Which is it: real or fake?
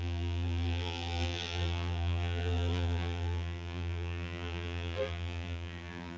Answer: fake